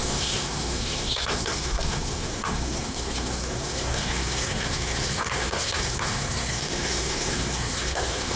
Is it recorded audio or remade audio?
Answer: remade